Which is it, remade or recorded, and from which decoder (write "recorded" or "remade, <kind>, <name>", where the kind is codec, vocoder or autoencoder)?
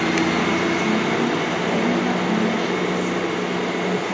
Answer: recorded